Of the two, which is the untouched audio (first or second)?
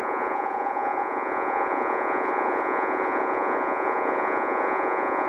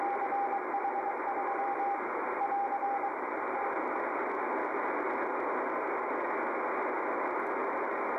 second